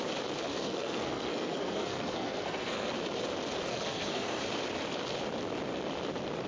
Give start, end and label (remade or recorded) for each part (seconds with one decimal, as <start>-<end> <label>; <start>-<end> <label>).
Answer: 0.0-0.5 recorded; 0.5-2.9 remade; 2.9-3.7 recorded; 3.7-4.4 remade; 4.4-6.5 recorded